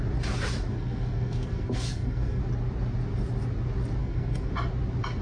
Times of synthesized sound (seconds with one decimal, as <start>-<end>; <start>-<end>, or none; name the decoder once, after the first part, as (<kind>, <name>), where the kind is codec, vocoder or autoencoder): 0.7-2.4 (codec, SNAC); 4.0-4.5